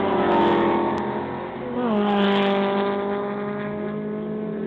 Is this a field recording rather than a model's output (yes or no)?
yes